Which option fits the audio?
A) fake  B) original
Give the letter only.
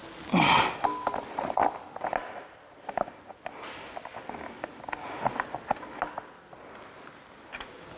B